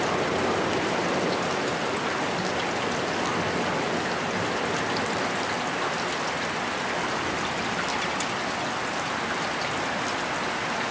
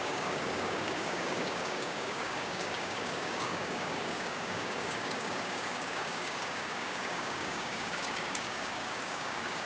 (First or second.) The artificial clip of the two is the second